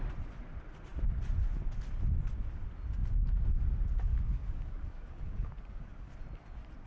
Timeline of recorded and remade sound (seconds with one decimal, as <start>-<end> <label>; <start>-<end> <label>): 0.0-4.1 recorded; 4.1-6.1 remade; 6.1-6.9 recorded